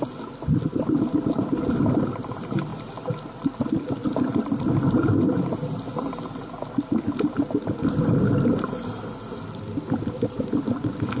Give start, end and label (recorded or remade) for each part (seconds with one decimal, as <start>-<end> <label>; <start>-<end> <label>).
0.0-11.2 recorded